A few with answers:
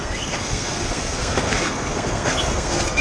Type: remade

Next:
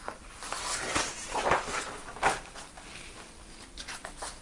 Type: recorded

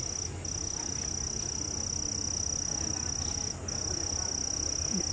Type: recorded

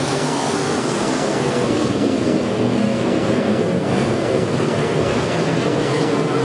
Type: remade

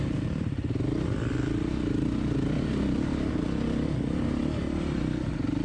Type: recorded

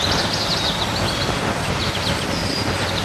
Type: recorded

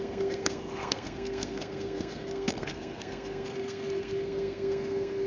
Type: remade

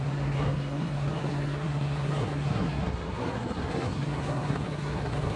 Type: remade